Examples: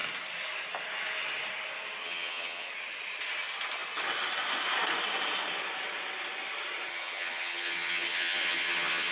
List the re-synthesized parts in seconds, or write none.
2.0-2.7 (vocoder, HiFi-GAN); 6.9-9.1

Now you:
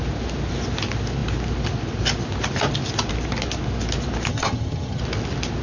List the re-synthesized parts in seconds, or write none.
4.3-5.0 (vocoder, HiFi-GAN)